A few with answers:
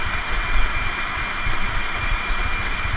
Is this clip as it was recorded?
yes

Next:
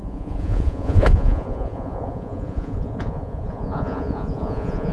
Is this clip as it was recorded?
no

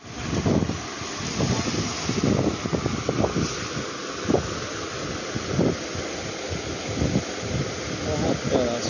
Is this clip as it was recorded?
yes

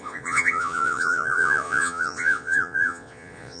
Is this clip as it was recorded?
no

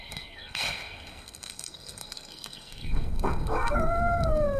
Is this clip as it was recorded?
no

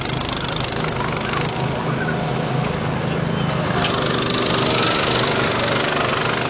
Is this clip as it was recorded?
yes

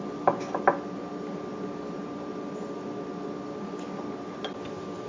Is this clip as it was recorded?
yes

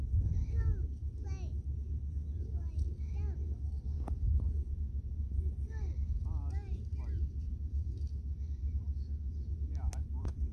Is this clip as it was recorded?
yes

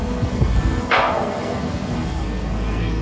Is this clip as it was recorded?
no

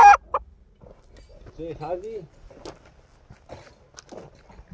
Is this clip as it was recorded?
yes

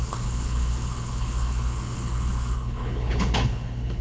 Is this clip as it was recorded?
no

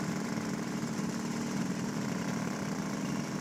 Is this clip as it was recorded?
no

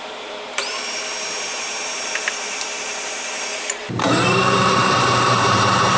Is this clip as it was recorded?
no